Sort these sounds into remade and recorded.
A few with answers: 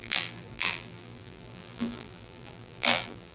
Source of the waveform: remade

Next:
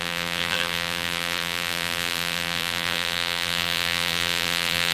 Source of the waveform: remade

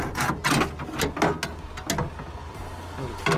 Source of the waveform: recorded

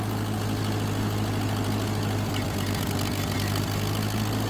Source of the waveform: recorded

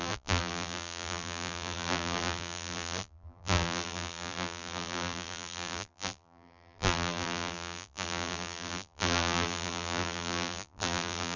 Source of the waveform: remade